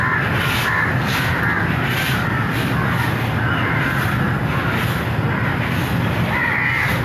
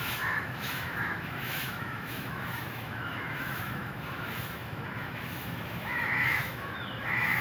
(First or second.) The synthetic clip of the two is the second